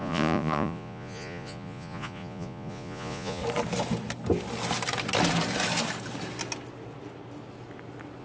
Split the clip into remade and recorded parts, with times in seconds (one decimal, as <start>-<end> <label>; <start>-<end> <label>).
0.0-3.4 remade; 3.4-8.2 recorded